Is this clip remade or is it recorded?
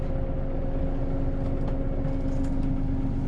recorded